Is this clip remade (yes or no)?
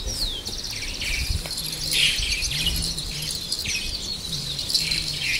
no